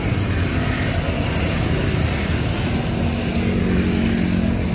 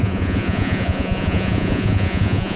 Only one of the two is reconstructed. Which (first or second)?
second